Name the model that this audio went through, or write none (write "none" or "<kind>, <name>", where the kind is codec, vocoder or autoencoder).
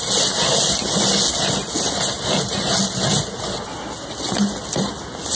none